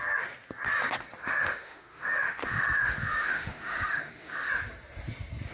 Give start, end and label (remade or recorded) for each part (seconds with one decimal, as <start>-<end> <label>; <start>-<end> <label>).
0.0-1.2 recorded; 1.2-4.5 remade; 4.5-5.5 recorded